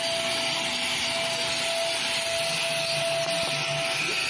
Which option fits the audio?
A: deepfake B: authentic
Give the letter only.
B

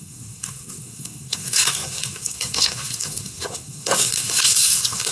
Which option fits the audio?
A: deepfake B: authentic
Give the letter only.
A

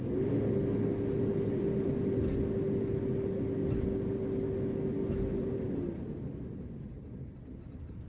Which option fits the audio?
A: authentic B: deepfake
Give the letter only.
A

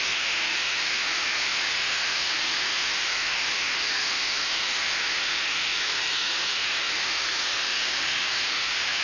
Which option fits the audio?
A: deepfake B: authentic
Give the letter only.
A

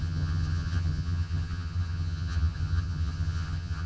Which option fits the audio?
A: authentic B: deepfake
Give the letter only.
B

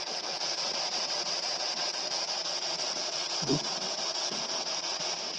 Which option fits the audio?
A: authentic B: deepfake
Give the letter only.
B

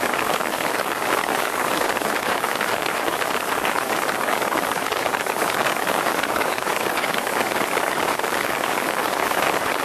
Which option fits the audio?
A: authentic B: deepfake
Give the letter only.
B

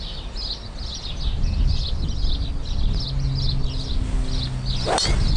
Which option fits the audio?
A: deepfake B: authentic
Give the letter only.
B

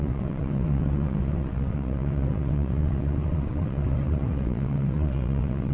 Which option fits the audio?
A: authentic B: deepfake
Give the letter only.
B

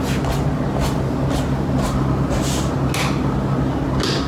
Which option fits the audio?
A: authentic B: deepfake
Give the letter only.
A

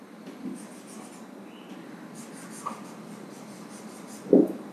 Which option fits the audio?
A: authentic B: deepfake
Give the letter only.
B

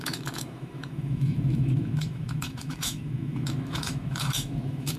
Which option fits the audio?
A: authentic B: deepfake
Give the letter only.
B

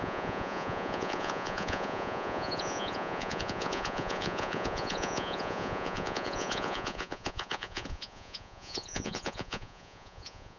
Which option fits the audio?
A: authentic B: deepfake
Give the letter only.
B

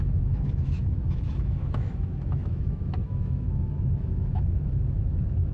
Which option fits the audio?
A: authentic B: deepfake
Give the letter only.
B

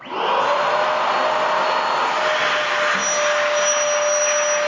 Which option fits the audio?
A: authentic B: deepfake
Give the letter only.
A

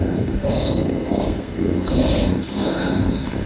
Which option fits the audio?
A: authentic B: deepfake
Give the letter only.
B